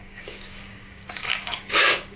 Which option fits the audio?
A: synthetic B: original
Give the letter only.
A